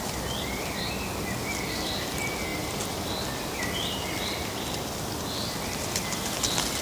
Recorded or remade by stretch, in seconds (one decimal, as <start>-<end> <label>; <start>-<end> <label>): 0.0-6.8 recorded